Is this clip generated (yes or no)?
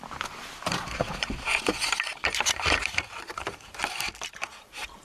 yes